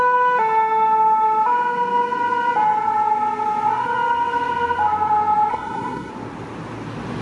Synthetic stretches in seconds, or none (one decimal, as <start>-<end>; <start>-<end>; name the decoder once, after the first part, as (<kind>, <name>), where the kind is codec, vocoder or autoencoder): 5.5-6.1 (codec, SNAC)